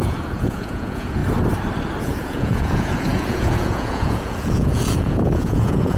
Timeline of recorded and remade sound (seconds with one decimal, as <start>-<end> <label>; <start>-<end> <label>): 0.0-1.2 remade; 1.2-2.0 recorded; 2.0-6.0 remade